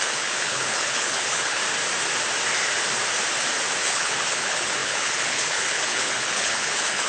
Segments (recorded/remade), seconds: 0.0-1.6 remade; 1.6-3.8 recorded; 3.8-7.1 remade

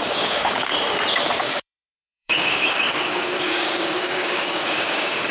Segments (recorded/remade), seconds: 0.0-0.7 remade; 0.7-1.4 recorded; 1.4-5.3 remade

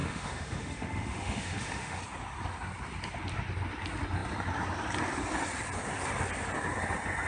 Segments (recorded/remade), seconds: 0.0-2.0 remade; 2.0-7.3 recorded